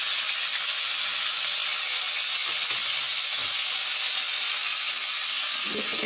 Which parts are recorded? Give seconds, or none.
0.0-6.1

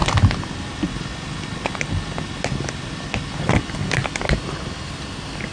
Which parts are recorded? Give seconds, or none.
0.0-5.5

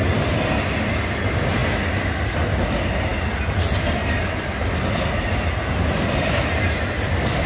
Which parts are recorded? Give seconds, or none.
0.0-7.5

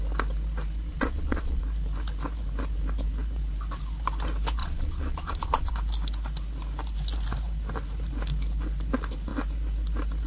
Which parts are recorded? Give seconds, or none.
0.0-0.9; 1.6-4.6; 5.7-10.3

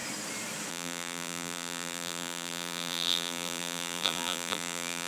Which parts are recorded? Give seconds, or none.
0.0-0.7

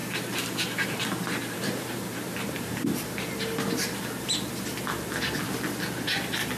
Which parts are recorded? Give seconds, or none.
4.0-6.6

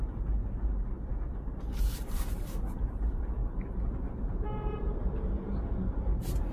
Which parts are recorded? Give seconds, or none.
3.4-4.1